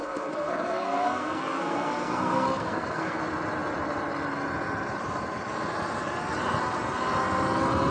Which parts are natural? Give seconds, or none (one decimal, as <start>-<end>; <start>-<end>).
3.2-7.9